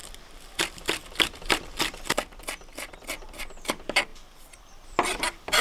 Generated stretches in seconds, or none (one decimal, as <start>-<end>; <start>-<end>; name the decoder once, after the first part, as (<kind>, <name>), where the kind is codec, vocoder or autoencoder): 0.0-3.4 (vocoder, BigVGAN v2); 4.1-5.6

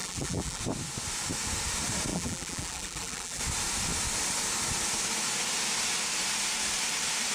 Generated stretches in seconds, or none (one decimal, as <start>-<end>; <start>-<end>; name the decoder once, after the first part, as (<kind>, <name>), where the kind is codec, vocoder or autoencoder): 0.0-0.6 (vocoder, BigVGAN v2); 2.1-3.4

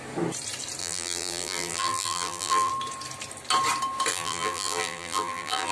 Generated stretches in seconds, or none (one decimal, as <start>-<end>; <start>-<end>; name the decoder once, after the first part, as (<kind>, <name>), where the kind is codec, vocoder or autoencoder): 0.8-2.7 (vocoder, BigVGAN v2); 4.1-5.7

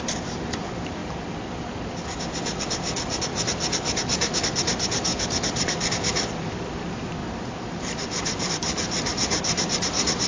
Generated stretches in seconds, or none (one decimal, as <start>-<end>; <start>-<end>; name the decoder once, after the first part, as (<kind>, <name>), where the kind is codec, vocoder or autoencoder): 0.0-1.0 (vocoder, BigVGAN v2); 2.6-5.1; 5.9-10.3

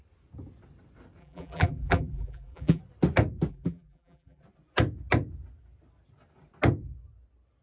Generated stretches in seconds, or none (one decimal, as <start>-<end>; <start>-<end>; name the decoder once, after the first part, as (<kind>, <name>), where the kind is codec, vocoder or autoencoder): 1.2-2.8 (vocoder, BigVGAN v2); 3.5-4.4

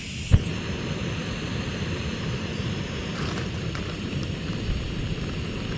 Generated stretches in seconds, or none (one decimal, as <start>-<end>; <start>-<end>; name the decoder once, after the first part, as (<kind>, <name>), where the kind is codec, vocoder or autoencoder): 1.2-4.7 (vocoder, BigVGAN v2)

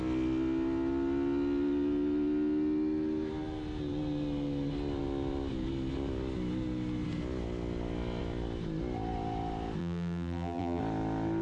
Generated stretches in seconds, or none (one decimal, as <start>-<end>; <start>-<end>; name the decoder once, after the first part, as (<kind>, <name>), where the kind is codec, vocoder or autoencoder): 9.8-10.8 (vocoder, BigVGAN v2)